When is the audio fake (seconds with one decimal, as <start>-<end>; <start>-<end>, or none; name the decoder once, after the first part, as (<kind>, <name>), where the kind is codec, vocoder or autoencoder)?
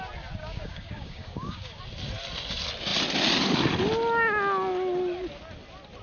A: 0.4-1.8 (codec, DAC)